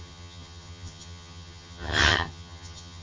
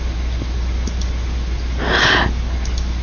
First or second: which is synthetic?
first